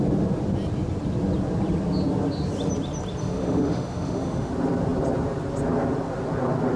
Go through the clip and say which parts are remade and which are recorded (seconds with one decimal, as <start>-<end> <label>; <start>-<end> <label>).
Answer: 0.0-3.2 recorded; 3.2-4.5 remade; 4.5-6.8 recorded